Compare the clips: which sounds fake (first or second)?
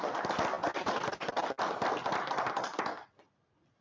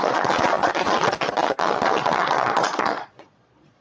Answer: second